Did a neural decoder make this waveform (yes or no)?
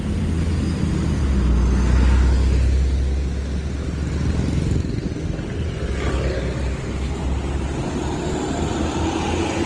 no